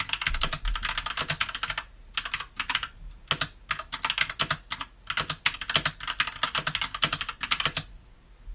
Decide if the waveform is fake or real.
real